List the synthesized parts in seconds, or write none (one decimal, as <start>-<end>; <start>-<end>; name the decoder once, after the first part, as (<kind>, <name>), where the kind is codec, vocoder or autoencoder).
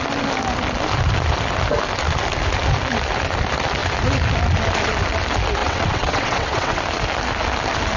5.6-6.8 (vocoder, WaveNeXt)